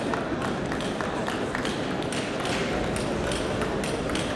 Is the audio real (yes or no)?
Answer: yes